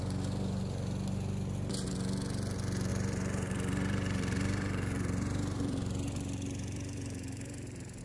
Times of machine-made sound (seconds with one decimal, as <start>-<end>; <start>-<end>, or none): 2.9-8.0